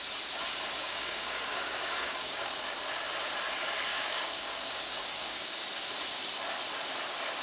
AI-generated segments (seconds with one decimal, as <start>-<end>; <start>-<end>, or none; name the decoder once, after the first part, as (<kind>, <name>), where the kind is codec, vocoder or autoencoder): 0.8-2.5 (codec, DAC); 3.9-5.6